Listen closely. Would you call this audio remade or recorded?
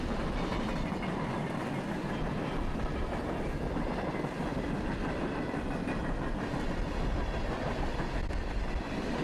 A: recorded